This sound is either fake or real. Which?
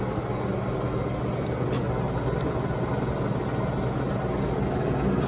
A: real